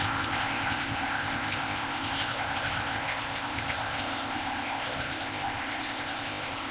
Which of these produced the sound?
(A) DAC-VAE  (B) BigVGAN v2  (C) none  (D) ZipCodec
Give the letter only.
D